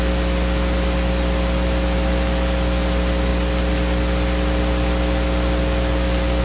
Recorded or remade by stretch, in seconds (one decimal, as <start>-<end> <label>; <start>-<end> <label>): 0.0-6.4 recorded